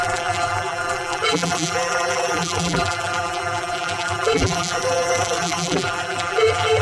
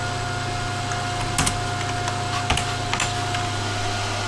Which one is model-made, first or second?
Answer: first